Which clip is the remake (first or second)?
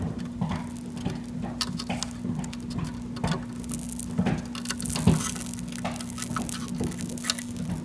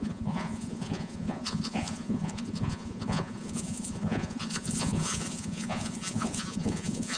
second